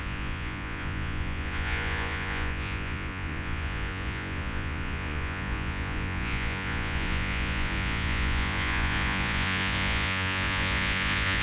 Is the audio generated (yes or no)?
yes